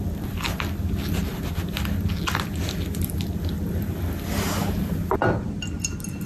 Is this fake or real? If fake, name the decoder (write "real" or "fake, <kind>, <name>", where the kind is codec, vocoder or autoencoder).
real